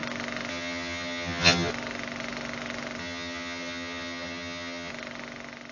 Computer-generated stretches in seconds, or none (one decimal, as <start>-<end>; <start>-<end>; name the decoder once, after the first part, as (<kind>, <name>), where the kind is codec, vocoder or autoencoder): 0.5-1.7 (vocoder, HiFi-GAN); 3.0-4.9